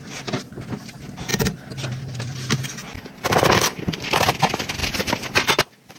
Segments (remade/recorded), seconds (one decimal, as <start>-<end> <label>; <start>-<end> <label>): 0.0-1.3 recorded; 1.3-2.0 remade; 2.0-4.8 recorded; 4.8-5.6 remade; 5.6-6.0 recorded